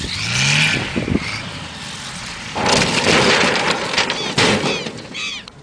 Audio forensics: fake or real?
real